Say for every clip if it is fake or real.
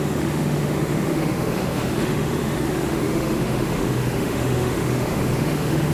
fake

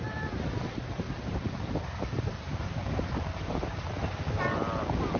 fake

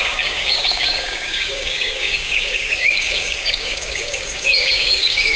fake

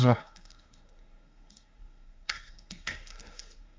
fake